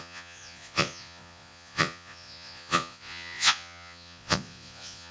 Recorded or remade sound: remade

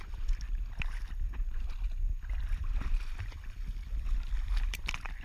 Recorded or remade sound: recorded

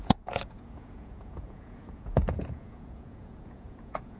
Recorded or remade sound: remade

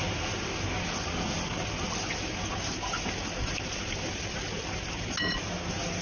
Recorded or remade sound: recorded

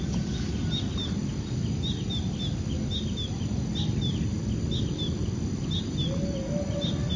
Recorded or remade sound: recorded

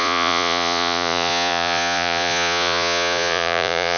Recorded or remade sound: remade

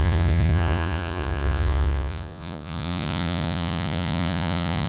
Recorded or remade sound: remade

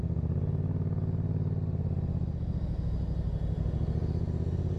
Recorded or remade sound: recorded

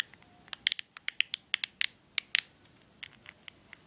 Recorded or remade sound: recorded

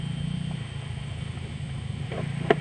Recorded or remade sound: recorded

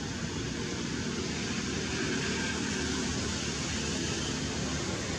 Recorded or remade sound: recorded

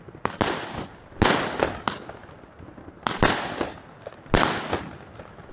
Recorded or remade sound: recorded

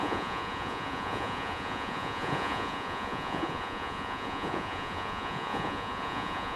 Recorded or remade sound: remade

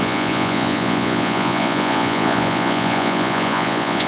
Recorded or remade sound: remade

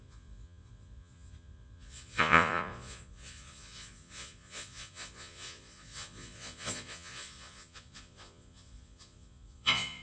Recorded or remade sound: remade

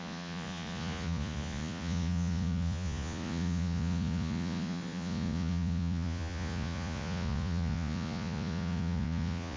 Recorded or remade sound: remade